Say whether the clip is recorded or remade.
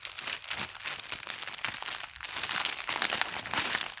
recorded